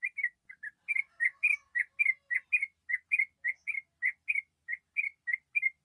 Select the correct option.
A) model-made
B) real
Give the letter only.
B